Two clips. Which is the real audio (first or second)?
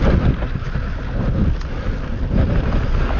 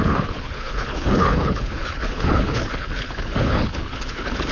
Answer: first